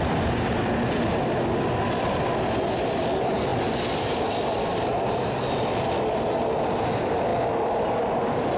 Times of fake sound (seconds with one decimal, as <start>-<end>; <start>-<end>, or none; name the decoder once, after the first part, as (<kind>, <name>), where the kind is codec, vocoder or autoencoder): none